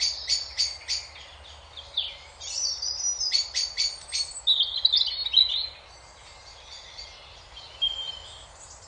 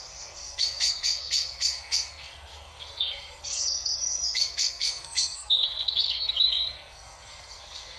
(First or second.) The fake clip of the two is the second